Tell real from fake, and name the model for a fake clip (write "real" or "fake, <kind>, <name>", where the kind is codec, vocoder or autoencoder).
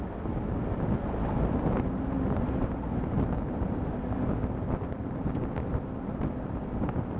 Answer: real